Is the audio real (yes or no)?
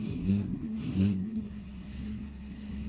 no